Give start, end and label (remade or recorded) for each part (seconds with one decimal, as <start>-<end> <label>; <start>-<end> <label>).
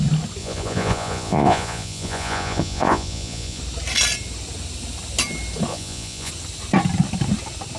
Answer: 0.0-0.4 recorded; 0.4-3.6 remade; 3.6-5.7 recorded; 5.7-6.3 remade; 6.3-7.8 recorded